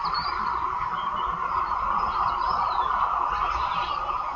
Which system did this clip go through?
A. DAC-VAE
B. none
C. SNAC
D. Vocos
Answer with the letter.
B